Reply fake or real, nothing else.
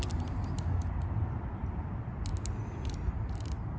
real